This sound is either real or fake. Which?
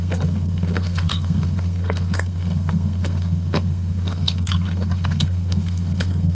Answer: fake